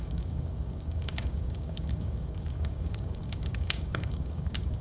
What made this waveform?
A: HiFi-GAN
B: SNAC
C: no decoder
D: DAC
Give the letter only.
D